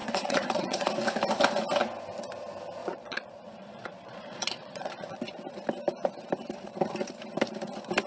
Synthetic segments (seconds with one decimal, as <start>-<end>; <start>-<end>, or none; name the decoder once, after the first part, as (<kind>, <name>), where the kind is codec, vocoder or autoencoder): 0.0-0.9 (vocoder, Vocos); 2.8-5.2